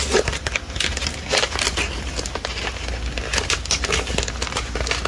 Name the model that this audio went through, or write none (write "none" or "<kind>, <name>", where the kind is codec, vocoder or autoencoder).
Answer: none